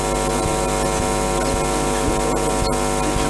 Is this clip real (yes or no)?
yes